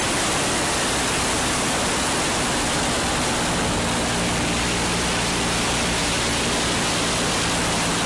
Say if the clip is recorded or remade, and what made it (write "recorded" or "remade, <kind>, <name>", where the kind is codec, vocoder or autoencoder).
recorded